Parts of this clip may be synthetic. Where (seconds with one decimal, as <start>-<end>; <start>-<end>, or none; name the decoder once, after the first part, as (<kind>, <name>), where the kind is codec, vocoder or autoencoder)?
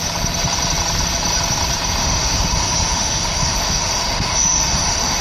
2.0-5.2 (autoencoder, DAC-VAE)